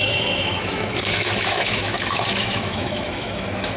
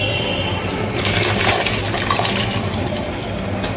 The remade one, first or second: first